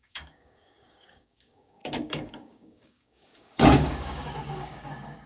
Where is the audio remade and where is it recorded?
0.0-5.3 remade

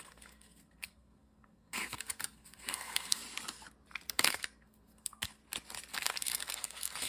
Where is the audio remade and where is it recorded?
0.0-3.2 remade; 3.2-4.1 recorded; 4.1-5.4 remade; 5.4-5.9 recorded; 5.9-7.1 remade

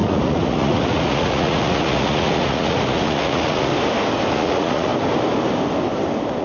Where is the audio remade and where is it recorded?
0.0-3.7 remade; 3.7-4.3 recorded; 4.3-4.9 remade; 4.9-6.4 recorded

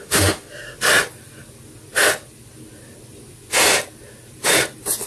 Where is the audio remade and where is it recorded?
0.0-0.5 remade; 0.5-5.1 recorded

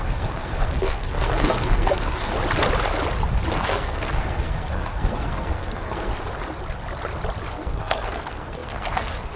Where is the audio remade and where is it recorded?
0.0-2.3 remade; 2.3-3.5 recorded; 3.5-6.1 remade; 6.1-7.5 recorded; 7.5-9.4 remade

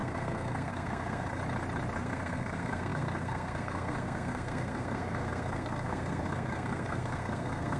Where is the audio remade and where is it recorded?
0.0-1.4 remade; 1.4-2.0 recorded; 2.0-7.8 remade